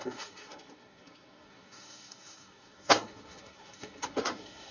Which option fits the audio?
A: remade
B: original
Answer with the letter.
A